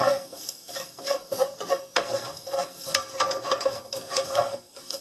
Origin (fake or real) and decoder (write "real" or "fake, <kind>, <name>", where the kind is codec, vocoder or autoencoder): fake, codec, SNAC